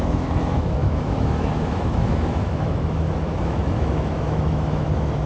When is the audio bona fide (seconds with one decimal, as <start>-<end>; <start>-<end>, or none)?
none